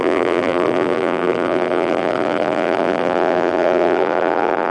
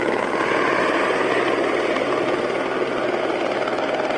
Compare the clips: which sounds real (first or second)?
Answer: second